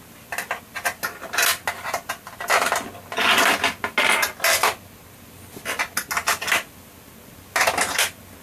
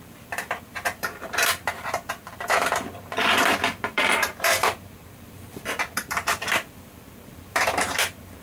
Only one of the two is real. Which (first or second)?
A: first